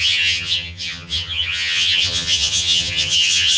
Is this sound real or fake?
fake